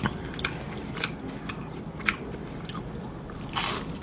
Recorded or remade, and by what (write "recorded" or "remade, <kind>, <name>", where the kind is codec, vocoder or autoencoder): recorded